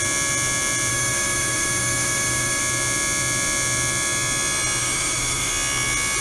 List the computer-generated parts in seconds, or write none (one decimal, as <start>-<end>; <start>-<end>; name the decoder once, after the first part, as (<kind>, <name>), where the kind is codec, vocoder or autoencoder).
0.9-2.6 (autoencoder, DAC-VAE); 4.8-5.5